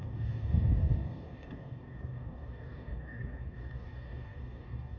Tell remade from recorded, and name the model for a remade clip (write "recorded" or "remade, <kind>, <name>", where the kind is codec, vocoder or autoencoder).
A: remade, codec, DAC